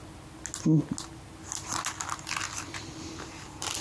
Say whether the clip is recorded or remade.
recorded